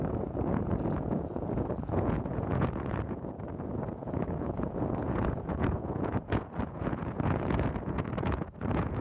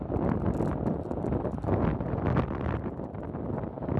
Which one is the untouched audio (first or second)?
second